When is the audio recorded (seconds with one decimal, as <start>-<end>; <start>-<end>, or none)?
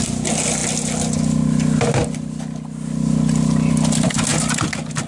0.0-5.1